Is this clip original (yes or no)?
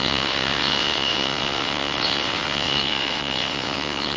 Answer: no